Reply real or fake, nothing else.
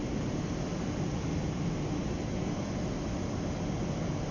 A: real